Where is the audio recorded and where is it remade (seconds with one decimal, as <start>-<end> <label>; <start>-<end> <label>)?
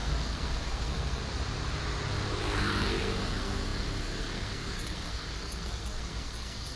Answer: 0.0-1.2 remade; 1.2-2.4 recorded; 2.4-6.8 remade